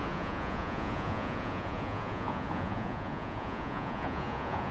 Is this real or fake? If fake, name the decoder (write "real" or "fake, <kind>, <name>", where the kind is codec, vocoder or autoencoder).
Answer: fake, vocoder, Vocos